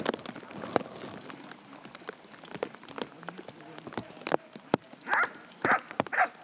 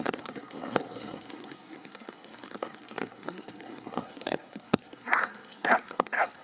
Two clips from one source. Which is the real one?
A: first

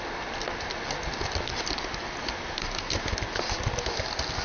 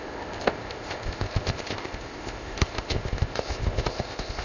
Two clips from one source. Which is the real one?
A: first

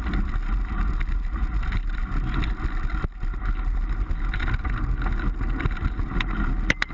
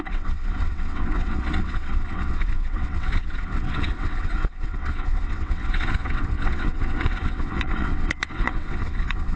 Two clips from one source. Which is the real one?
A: first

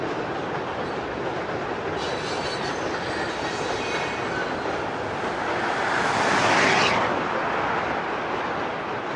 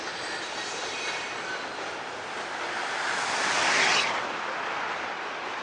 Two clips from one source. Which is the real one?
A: first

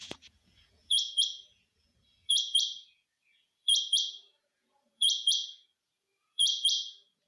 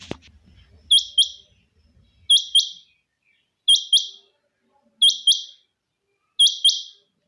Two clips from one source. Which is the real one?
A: second